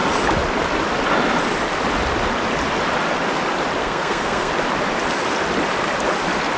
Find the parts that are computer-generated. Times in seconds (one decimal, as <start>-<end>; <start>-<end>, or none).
3.8-4.5